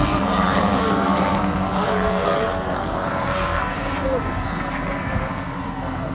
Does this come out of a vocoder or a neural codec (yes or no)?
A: yes